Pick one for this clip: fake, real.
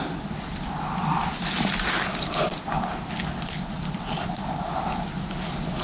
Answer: real